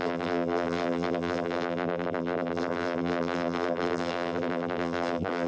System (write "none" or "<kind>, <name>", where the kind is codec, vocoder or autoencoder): vocoder, BigVGAN v2